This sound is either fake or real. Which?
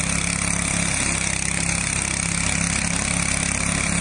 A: fake